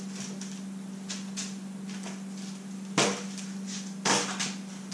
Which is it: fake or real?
real